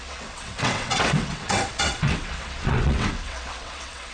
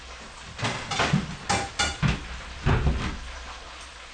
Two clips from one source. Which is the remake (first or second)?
first